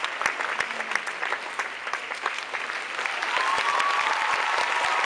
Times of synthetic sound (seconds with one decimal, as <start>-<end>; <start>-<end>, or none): none